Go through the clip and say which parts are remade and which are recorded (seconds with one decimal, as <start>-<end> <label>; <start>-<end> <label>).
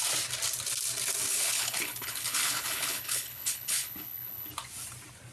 0.0-1.3 recorded; 1.3-4.5 remade; 4.5-5.3 recorded